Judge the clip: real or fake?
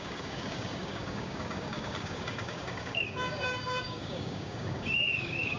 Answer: fake